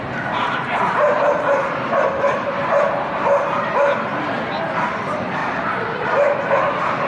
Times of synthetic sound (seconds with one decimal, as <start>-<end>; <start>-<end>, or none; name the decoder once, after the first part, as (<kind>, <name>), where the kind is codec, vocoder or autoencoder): none